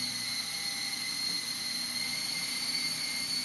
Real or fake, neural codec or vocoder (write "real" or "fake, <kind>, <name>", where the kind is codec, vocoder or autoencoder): real